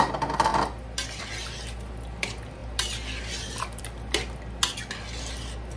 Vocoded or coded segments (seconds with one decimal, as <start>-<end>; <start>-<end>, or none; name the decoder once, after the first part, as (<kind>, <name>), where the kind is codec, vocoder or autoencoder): none